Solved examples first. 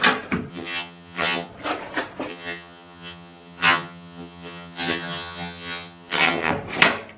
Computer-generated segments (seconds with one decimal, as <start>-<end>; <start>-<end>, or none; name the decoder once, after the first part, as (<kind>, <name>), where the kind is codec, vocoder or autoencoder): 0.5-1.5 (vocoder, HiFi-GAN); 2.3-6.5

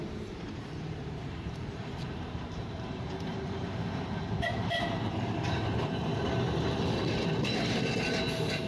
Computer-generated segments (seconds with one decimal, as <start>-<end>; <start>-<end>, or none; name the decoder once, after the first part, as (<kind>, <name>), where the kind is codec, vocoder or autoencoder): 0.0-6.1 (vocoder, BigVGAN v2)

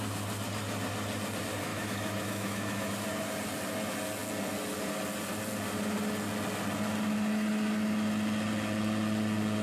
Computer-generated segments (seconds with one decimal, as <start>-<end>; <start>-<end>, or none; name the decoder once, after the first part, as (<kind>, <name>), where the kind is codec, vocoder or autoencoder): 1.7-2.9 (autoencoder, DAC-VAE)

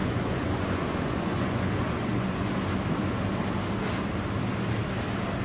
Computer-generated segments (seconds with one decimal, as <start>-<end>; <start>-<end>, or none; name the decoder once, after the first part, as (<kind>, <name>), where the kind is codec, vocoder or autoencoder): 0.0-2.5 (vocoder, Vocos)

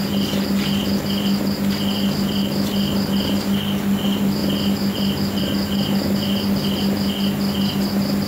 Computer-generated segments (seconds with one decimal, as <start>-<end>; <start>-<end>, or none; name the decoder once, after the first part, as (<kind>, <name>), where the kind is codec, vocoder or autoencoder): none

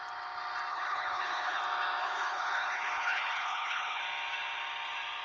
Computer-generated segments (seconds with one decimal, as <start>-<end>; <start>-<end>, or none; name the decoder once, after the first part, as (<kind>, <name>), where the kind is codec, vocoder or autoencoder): 0.7-1.6 (codec, HILCodec); 2.0-4.0